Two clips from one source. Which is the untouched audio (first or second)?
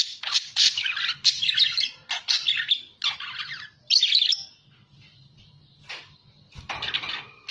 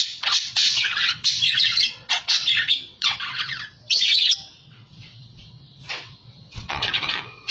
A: first